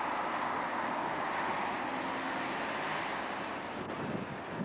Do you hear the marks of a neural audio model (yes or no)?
no